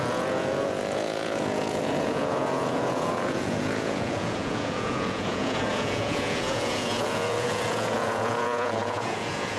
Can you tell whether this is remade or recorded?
remade